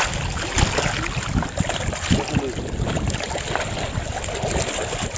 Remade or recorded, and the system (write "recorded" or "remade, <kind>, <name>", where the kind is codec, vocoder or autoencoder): recorded